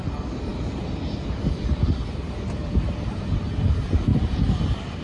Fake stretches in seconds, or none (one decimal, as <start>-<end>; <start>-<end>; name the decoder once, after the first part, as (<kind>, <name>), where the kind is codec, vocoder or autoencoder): 2.6-3.4 (vocoder, BigVGAN v2); 4.1-5.0